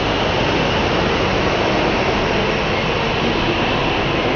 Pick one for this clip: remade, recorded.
recorded